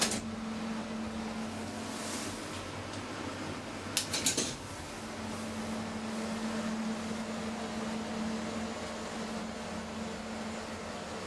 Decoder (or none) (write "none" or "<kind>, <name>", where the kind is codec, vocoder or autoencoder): none